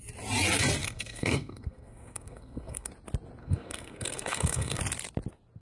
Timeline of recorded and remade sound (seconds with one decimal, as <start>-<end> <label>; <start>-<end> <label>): 0.0-0.8 recorded; 0.8-2.9 remade; 2.9-3.4 recorded; 3.4-4.8 remade; 4.8-5.6 recorded